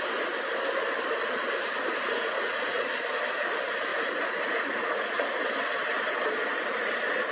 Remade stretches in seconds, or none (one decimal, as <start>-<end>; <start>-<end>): 1.9-2.8; 3.9-5.3